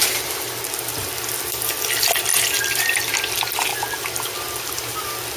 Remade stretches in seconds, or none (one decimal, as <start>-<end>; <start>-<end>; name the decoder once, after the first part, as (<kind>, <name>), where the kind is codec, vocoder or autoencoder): 2.3-3.1 (vocoder, BigVGAN v2)